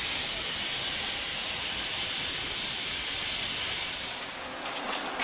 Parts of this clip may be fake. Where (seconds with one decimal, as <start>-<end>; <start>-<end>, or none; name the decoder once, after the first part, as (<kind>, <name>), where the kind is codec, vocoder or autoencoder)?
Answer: 1.4-2.0 (vocoder, Vocos)